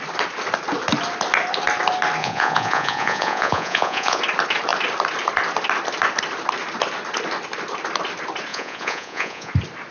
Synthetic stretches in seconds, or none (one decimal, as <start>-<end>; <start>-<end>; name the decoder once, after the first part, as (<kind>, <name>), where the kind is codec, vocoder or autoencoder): 2.2-4.2 (vocoder, Vocos); 8.5-9.5